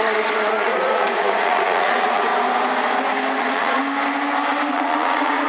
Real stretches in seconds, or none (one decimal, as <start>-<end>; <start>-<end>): 2.3-3.4; 3.8-4.7